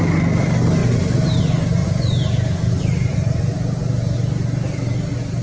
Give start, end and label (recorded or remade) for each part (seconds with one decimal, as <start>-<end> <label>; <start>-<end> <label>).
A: 0.0-1.8 recorded; 1.8-3.4 remade; 3.4-5.4 recorded